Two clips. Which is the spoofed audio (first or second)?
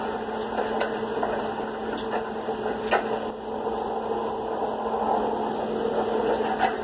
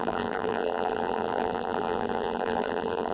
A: second